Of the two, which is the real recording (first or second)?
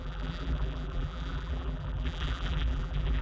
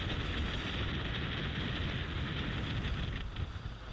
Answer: second